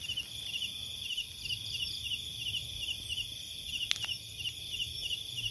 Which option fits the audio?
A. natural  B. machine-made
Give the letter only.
A